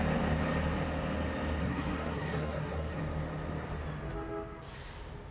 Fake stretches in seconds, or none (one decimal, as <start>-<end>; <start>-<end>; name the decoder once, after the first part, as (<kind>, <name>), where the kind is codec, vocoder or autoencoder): 1.6-3.0 (codec, SNAC)